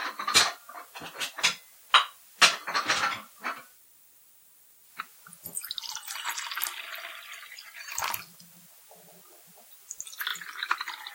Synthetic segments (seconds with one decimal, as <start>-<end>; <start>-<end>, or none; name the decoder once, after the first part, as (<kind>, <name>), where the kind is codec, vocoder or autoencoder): 10.3-11.1 (vocoder, BigVGAN v2)